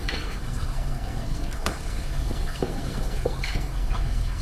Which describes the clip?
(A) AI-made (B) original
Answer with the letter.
A